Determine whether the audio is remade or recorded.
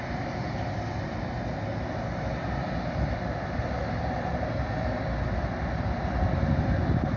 recorded